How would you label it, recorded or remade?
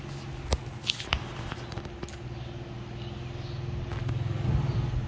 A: recorded